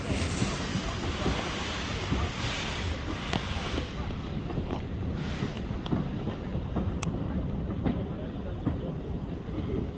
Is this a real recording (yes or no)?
no